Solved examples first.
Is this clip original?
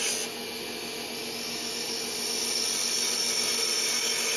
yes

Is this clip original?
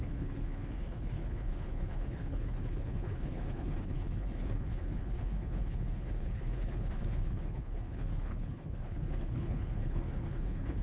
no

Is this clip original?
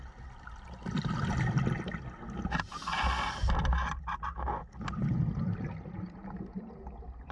yes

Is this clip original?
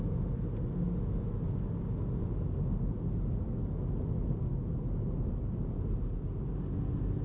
yes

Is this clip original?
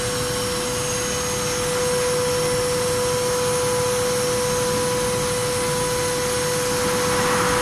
yes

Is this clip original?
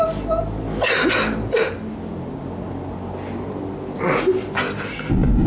yes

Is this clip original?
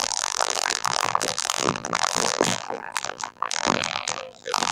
no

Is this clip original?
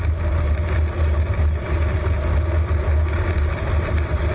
yes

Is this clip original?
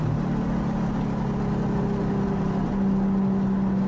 yes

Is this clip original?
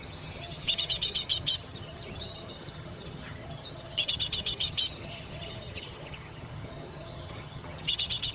no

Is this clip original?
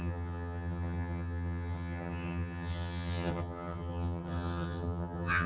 no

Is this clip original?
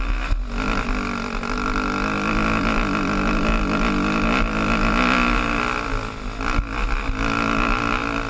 yes